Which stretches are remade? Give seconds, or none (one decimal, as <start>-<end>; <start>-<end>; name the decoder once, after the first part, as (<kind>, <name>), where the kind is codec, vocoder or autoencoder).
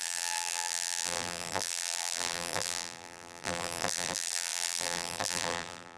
0.0-6.0 (vocoder, BigVGAN v2)